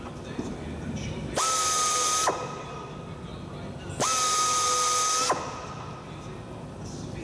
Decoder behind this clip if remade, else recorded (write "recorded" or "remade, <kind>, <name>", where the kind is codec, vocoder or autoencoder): recorded